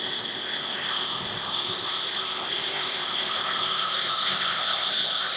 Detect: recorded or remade remade